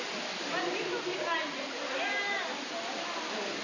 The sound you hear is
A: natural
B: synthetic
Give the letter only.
A